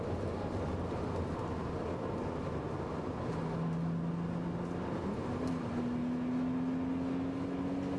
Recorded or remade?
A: recorded